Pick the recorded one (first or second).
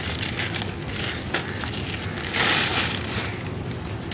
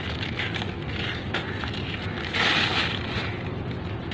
second